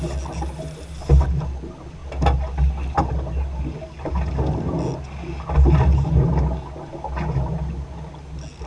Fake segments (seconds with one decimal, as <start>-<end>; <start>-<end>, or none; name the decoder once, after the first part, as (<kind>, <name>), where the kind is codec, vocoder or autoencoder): none